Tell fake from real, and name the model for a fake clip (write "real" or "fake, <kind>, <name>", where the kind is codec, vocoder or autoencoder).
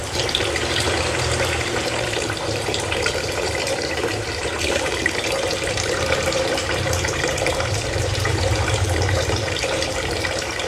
fake, vocoder, BigVGAN v2